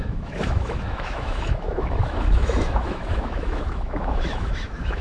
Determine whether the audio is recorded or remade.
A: remade